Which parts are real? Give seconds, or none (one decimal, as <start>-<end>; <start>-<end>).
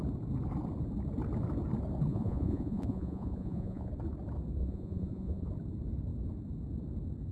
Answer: 0.0-2.1; 3.9-4.6; 5.5-7.3